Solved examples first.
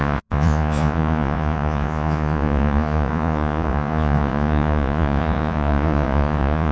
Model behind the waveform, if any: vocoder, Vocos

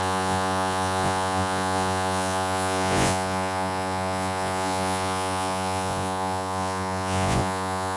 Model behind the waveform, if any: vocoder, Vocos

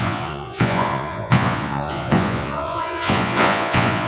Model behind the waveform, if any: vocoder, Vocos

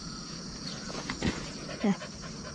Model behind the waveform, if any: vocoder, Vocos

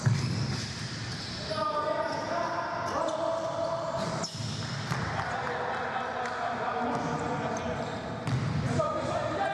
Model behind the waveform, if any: none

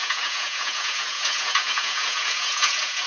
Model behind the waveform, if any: vocoder, Vocos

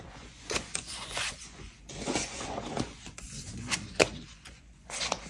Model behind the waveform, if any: vocoder, Vocos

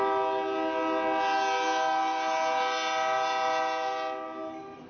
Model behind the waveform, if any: none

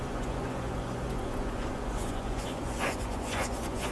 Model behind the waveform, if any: vocoder, Vocos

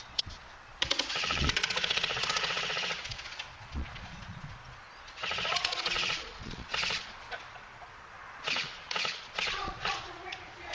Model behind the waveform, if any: vocoder, Vocos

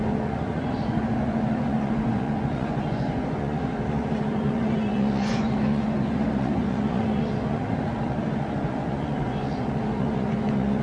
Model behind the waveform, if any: vocoder, Vocos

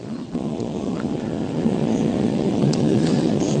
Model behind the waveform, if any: vocoder, Vocos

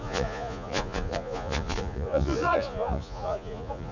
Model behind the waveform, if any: vocoder, Vocos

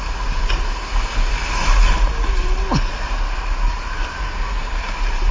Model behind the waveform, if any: none